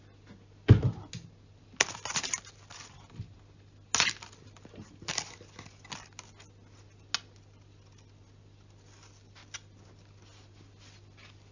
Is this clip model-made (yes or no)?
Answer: no